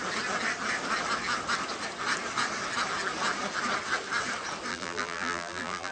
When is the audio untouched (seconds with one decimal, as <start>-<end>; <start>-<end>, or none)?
0.0-4.7